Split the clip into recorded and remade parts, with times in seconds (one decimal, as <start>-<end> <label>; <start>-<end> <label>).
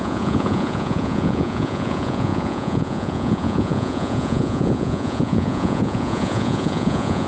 0.0-7.3 remade